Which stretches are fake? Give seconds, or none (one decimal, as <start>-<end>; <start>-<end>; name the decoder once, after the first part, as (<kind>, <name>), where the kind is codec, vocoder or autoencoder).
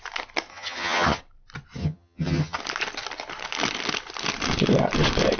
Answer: 0.5-1.2 (vocoder, HiFi-GAN); 1.8-2.6